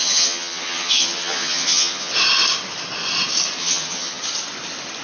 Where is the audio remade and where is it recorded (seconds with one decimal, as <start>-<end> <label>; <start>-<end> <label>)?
0.0-2.1 remade; 2.1-3.6 recorded; 3.6-4.2 remade; 4.2-5.0 recorded